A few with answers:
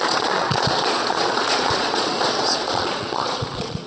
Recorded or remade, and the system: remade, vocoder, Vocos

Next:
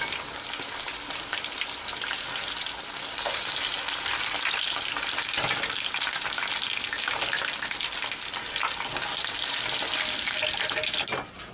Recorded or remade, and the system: recorded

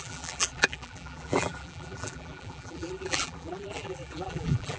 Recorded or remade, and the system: remade, vocoder, BigVGAN v2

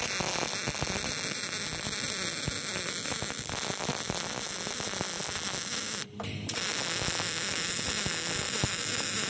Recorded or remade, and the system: recorded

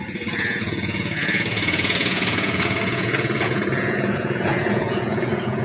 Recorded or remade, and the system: remade, vocoder, Vocos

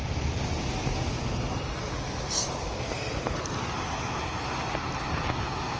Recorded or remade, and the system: recorded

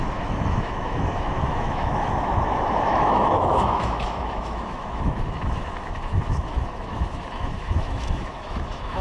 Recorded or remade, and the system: remade, autoencoder, DAC-VAE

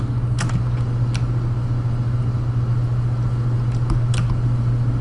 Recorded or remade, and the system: recorded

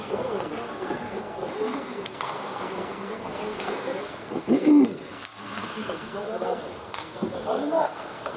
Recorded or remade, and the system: remade, codec, SNAC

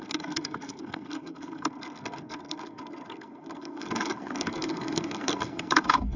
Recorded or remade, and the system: remade, codec, SNAC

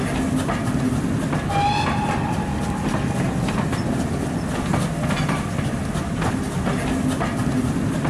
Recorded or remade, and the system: recorded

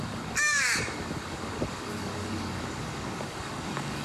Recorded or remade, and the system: remade, codec, DAC